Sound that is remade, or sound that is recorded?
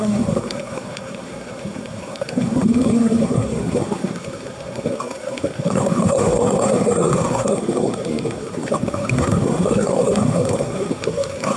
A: remade